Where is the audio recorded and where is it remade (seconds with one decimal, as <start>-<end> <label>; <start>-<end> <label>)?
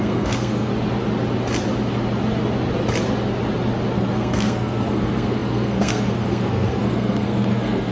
0.0-0.7 remade; 0.7-4.0 recorded; 4.0-7.9 remade